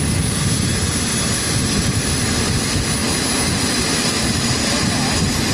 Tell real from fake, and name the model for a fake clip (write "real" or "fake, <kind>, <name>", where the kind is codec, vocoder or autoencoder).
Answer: real